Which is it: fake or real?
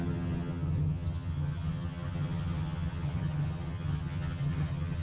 fake